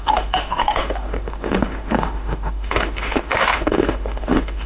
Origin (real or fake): fake